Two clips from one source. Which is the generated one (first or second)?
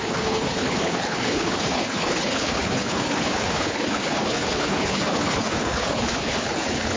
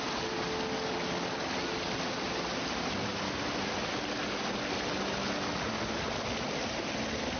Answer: first